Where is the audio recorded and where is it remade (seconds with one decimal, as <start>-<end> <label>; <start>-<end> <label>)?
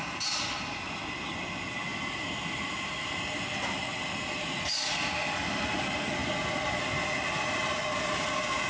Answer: 0.0-1.9 recorded; 1.9-3.2 remade; 3.2-8.7 recorded